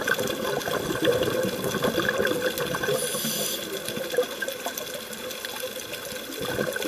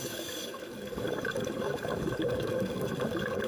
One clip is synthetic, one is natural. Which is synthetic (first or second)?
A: second